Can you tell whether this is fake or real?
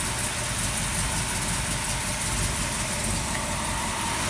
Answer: real